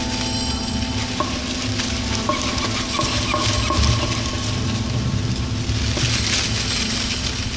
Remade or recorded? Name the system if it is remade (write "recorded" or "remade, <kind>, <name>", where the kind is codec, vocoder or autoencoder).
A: recorded